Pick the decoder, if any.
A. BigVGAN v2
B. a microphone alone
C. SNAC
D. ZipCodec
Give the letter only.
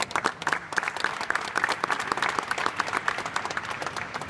B